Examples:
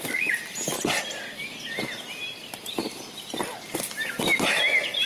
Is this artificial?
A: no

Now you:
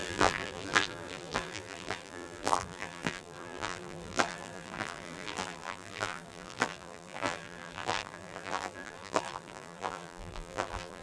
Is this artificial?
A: yes